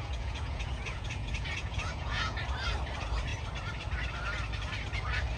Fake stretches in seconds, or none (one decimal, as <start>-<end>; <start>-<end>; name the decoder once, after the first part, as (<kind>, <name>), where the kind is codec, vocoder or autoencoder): 0.0-2.4 (vocoder, Vocos)

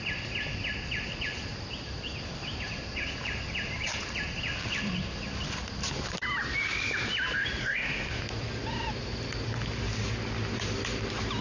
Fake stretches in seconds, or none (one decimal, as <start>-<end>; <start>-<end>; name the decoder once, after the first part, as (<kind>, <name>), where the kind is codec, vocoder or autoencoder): 7.6-8.2 (codec, SNAC)